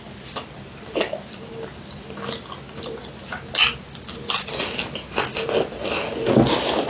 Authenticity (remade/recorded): recorded